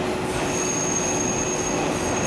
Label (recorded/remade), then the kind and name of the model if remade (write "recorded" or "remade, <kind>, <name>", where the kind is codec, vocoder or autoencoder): recorded